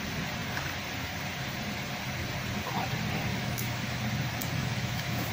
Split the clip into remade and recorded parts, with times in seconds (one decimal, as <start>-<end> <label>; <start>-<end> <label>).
0.0-3.3 recorded; 3.3-4.0 remade; 4.0-4.6 recorded; 4.6-5.3 remade

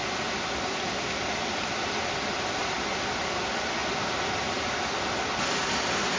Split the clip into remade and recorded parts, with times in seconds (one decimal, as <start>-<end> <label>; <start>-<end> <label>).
0.0-6.2 recorded

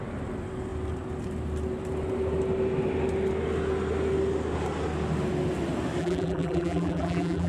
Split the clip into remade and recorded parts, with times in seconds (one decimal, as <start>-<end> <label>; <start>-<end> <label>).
0.0-6.0 recorded; 6.0-7.5 remade

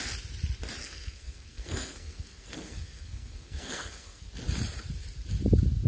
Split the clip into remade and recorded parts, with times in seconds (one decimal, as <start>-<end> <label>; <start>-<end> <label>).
0.0-0.8 recorded; 0.8-4.3 remade; 4.3-5.9 recorded

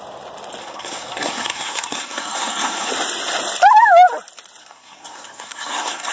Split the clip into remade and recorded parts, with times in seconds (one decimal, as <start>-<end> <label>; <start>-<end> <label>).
0.0-0.6 recorded; 0.6-2.9 remade; 2.9-4.6 recorded; 4.6-6.1 remade

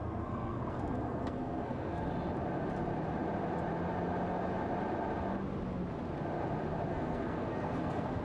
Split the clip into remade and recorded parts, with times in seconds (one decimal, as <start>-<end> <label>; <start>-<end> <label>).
0.0-2.1 remade; 2.1-6.9 recorded; 6.9-8.2 remade

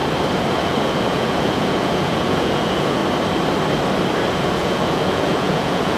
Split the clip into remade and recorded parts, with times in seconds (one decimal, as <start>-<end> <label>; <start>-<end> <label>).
0.0-0.5 recorded; 0.5-3.0 remade; 3.0-4.3 recorded; 4.3-6.0 remade